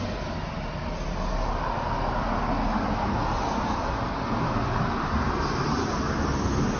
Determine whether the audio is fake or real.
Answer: real